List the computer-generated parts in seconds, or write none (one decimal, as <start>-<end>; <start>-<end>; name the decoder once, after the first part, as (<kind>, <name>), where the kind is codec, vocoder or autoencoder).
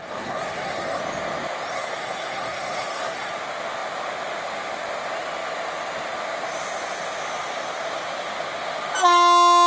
0.0-1.0 (codec, SNAC); 1.7-3.3